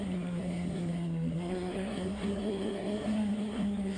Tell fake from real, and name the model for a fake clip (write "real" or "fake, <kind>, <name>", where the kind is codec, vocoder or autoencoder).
fake, codec, SNAC